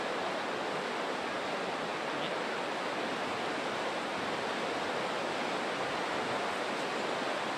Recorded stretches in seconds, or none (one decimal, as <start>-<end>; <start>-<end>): 0.0-7.6